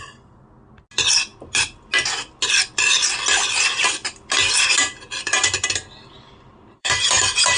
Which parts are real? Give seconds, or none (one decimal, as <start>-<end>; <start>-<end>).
0.0-6.5

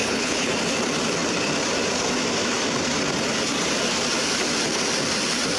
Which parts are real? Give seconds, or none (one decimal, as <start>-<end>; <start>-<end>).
0.5-5.6

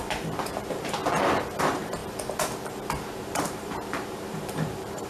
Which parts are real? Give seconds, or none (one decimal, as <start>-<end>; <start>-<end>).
1.0-1.6; 2.0-3.1

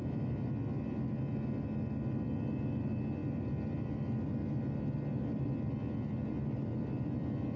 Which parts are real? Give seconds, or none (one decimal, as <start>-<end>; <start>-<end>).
0.0-7.6